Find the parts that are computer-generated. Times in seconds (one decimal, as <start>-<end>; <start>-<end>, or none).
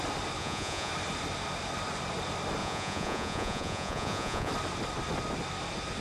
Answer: 0.4-0.9; 2.6-4.5